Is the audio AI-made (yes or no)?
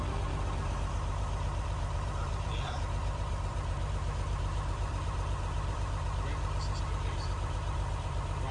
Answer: yes